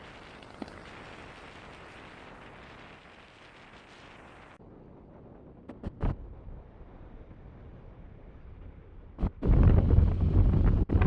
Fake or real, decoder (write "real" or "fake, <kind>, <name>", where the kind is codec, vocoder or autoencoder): real